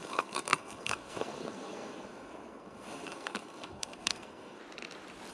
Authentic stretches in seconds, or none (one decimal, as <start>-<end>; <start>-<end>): 4.6-5.3